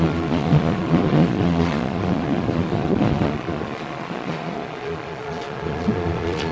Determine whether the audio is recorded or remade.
remade